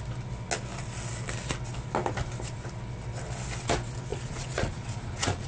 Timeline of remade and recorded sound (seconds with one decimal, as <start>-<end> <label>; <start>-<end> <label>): 0.0-4.1 recorded; 4.1-5.5 remade

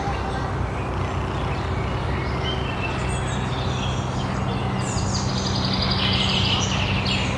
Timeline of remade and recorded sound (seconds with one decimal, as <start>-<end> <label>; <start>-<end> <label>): 0.0-7.4 recorded

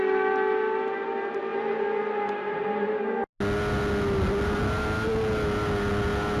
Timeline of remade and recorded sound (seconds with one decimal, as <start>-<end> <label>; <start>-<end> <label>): 0.0-6.4 recorded

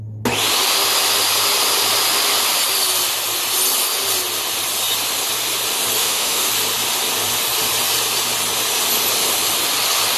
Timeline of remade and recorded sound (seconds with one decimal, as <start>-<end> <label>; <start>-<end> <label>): 0.0-6.0 recorded; 6.0-6.5 remade; 6.5-10.2 recorded

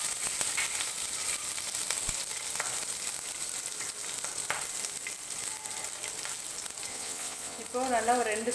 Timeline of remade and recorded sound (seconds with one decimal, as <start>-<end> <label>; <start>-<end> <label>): 0.0-6.9 recorded; 6.9-7.6 remade; 7.6-8.5 recorded